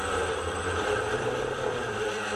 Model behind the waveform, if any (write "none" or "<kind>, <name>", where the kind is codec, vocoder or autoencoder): vocoder, BigVGAN v2